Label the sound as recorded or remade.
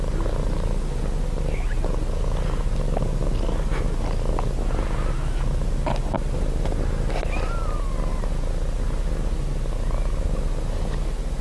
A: recorded